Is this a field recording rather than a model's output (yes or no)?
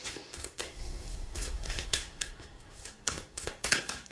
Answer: no